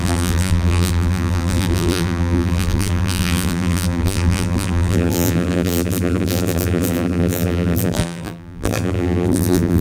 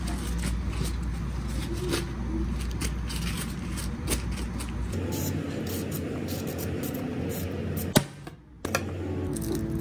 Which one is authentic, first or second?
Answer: second